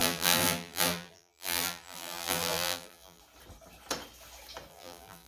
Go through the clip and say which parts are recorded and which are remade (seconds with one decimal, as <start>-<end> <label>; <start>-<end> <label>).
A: 0.0-3.2 remade; 3.2-4.7 recorded; 4.7-5.3 remade